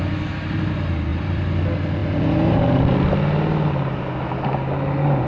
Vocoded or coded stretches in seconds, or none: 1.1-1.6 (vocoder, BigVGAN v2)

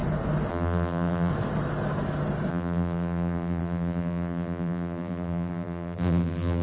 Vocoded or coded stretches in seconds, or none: 0.5-1.3 (vocoder, BigVGAN v2); 2.5-6.6

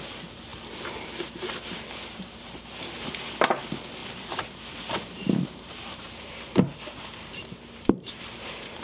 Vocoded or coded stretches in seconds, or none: 0.5-3.1 (vocoder, BigVGAN v2); 4.0-8.8

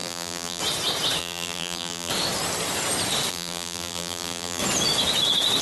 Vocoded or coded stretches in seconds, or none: 0.0-0.6 (vocoder, BigVGAN v2); 1.2-2.1; 3.3-4.6

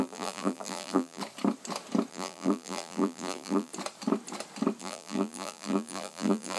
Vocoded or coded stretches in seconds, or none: 0.0-1.2 (vocoder, BigVGAN v2); 2.1-3.7; 4.8-6.6

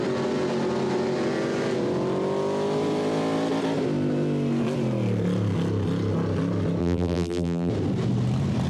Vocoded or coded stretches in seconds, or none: 6.8-7.7 (vocoder, BigVGAN v2)

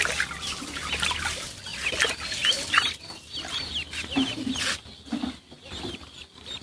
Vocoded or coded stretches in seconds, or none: none